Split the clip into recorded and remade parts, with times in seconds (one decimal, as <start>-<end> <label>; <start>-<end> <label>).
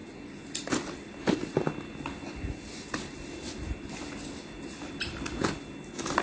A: 0.0-6.2 recorded